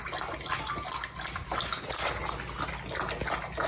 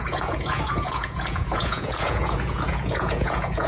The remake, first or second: second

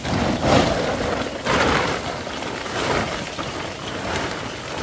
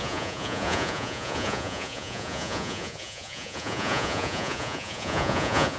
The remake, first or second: second